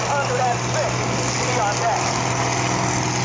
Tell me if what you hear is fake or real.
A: real